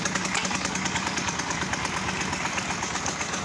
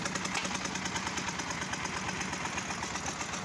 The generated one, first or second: first